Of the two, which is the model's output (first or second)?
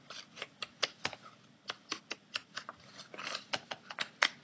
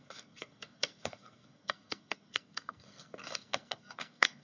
second